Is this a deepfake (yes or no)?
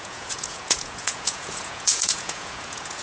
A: yes